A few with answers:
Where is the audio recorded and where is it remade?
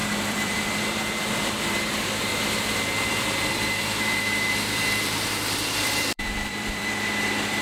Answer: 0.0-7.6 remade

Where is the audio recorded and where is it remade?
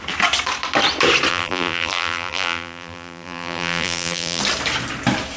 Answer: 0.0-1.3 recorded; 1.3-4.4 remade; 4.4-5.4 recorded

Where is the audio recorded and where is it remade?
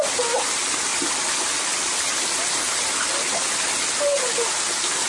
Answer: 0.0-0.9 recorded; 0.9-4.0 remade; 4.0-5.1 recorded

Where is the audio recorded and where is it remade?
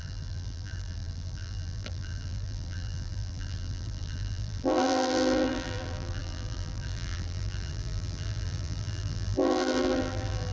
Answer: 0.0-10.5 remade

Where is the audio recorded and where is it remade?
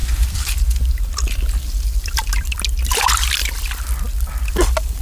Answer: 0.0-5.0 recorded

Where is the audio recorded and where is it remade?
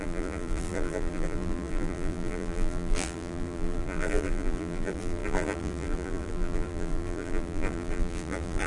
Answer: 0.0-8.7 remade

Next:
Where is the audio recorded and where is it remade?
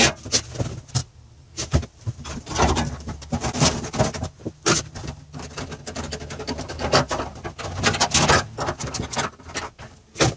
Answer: 0.0-1.0 recorded; 1.0-3.9 remade; 3.9-10.4 recorded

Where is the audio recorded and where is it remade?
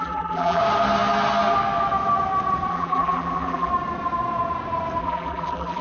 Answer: 0.0-0.6 remade; 0.6-2.7 recorded; 2.7-3.7 remade; 3.7-5.0 recorded; 5.0-5.8 remade